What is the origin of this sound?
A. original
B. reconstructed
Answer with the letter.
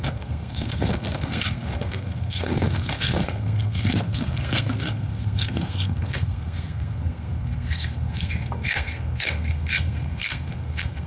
B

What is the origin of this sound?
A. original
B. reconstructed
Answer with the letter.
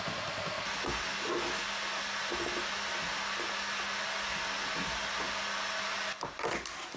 A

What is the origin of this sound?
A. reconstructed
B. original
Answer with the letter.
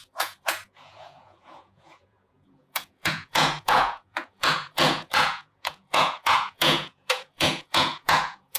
A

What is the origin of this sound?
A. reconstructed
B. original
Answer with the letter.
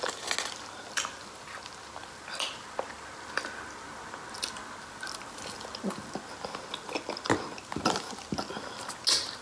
B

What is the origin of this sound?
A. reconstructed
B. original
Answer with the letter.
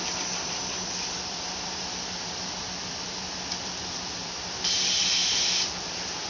A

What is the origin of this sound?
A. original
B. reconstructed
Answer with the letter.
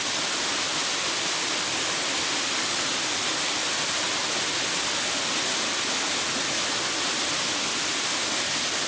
A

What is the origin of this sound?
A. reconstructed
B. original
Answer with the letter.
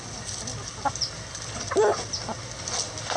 B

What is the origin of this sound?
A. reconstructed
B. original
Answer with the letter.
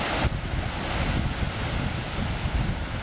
B